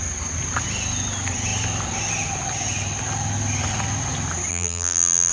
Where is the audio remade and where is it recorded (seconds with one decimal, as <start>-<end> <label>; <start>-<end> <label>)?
0.0-4.5 recorded; 4.5-5.3 remade